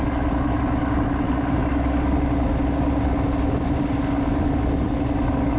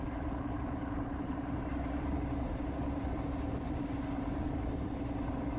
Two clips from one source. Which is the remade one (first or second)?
second